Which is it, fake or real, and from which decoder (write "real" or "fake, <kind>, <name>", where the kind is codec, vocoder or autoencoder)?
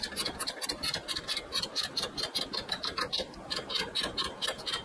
fake, vocoder, BigVGAN v2